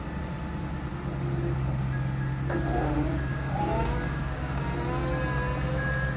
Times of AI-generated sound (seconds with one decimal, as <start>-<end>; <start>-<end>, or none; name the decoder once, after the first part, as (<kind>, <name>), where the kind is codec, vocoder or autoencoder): 3.3-4.6 (codec, DAC)